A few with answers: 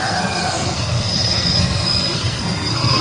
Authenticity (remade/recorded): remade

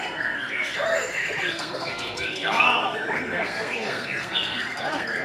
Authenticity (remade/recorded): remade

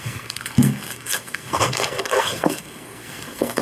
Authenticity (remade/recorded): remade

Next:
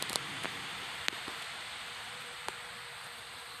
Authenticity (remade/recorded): recorded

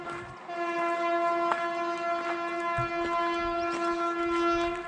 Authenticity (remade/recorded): recorded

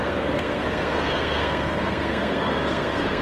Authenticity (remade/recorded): remade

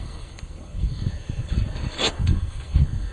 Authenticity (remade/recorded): remade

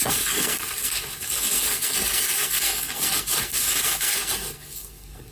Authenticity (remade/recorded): remade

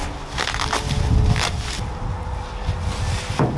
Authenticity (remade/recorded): recorded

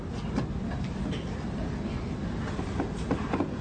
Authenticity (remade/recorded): recorded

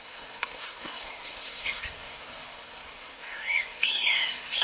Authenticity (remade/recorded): remade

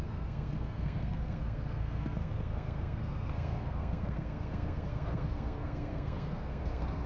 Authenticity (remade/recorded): remade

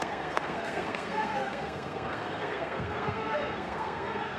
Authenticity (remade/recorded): remade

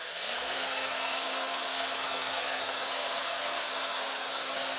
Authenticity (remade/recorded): remade